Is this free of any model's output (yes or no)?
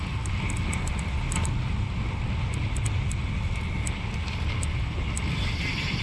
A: yes